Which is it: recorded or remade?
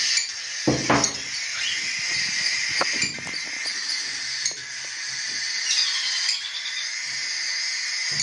recorded